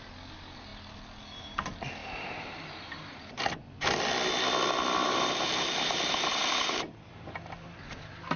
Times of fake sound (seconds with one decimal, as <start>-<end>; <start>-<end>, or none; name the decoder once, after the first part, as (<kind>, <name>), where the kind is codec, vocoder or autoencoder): 2.0-3.2 (vocoder, BigVGAN v2); 5.0-7.3

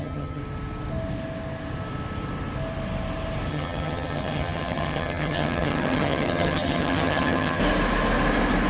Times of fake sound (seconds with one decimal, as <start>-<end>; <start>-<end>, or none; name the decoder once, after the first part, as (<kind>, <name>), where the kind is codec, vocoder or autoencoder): 0.0-0.4 (vocoder, HiFi-GAN); 3.5-7.6

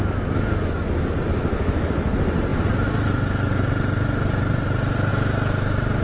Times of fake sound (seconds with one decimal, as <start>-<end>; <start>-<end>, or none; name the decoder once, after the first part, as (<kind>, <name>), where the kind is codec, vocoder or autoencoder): 1.4-1.9 (autoencoder, DAC-VAE)

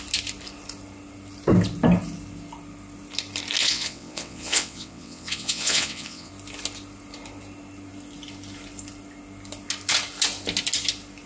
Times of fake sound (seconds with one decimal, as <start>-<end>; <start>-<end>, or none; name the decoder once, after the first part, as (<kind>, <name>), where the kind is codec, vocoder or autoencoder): 3.6-6.3 (vocoder, WaveNeXt)

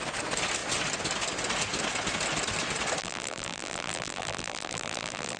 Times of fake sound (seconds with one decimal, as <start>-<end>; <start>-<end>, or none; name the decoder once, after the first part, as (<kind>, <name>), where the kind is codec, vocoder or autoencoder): 3.0-5.4 (vocoder, BigVGAN v2)

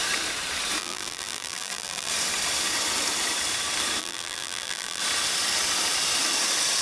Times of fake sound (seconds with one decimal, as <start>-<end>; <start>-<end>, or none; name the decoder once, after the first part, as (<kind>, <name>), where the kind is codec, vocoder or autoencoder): 0.8-2.1 (vocoder, BigVGAN v2); 4.0-5.0

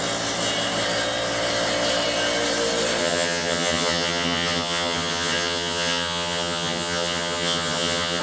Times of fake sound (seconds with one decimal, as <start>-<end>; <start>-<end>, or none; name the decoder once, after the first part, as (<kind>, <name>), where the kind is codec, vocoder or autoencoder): 3.0-8.2 (vocoder, HiFi-GAN)

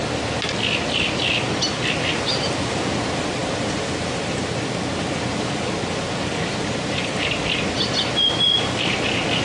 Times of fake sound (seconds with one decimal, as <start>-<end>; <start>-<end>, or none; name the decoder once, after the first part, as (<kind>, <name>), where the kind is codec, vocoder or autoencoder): none